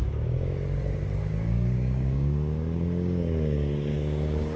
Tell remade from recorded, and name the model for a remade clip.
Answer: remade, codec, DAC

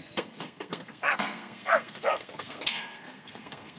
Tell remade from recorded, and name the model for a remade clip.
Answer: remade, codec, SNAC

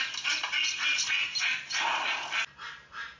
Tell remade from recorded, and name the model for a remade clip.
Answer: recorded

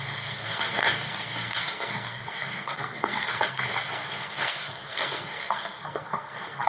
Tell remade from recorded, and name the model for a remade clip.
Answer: remade, codec, SNAC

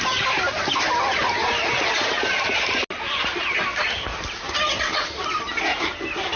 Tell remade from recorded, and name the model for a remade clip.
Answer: recorded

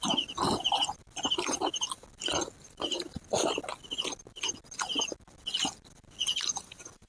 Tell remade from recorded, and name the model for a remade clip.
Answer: recorded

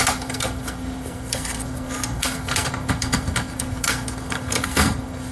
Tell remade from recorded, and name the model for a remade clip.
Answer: remade, codec, SNAC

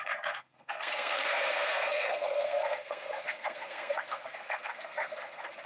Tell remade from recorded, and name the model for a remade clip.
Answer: remade, codec, SNAC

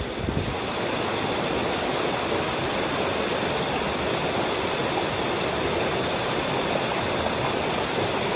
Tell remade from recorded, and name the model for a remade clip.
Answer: recorded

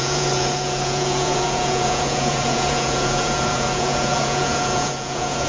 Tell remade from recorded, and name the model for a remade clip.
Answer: remade, vocoder, Vocos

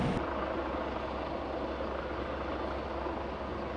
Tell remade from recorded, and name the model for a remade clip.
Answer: recorded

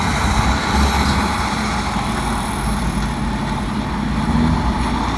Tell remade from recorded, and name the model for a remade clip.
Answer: recorded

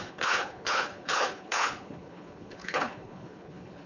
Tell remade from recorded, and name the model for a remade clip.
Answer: remade, codec, HILCodec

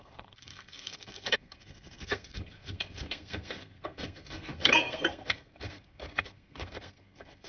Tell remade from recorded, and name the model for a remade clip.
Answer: remade, codec, SNAC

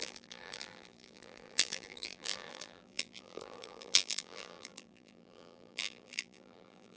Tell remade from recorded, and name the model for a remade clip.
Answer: remade, vocoder, BigVGAN v2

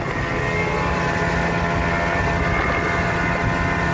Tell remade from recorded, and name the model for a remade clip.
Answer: recorded